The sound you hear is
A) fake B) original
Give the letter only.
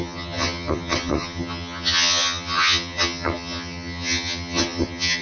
A